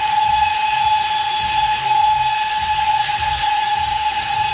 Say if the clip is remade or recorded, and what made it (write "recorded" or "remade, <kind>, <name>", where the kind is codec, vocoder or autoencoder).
remade, vocoder, Vocos